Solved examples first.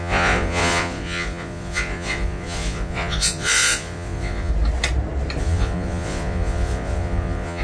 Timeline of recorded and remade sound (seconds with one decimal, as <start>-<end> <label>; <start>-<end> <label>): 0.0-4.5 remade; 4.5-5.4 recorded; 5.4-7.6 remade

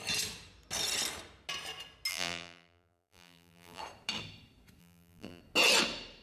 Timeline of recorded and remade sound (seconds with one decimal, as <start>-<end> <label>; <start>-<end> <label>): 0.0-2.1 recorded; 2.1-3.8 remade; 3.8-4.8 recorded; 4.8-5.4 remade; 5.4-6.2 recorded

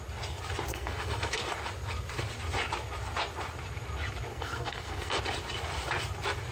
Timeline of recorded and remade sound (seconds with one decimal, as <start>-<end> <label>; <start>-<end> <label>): 0.0-0.7 recorded; 0.7-1.3 remade; 1.3-4.3 recorded; 4.3-5.2 remade; 5.2-6.5 recorded